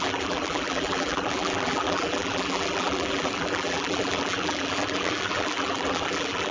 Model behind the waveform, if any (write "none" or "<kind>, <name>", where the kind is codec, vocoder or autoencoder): vocoder, BigVGAN v2